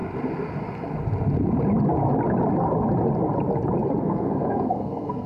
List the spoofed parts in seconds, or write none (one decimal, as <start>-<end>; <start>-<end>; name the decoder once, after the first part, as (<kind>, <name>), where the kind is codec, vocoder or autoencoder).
4.0-5.3 (codec, SNAC)